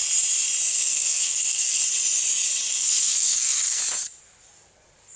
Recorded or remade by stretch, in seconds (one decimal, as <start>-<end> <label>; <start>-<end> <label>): 0.0-0.7 recorded; 0.7-1.8 remade; 1.8-2.7 recorded; 2.7-3.8 remade; 3.8-5.2 recorded